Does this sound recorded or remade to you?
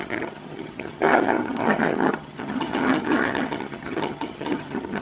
remade